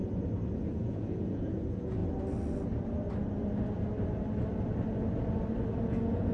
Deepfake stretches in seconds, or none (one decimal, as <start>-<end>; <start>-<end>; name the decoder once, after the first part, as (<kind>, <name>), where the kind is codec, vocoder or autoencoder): 0.6-2.0 (vocoder, Vocos); 5.8-6.3